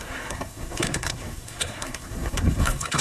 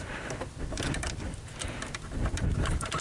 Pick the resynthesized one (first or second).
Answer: first